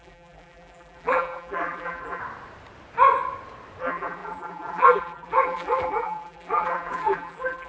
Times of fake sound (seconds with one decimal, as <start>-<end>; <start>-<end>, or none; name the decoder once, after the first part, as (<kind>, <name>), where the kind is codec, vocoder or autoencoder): 0.0-2.2 (vocoder, BigVGAN v2); 3.8-7.7